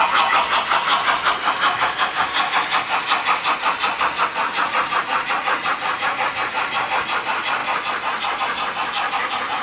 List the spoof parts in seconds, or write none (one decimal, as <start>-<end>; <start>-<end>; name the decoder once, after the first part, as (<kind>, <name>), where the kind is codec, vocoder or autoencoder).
4.5-6.3 (vocoder, Vocos)